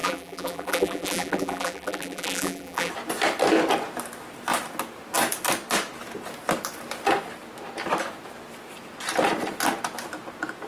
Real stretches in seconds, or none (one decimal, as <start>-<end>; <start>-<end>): 2.9-10.7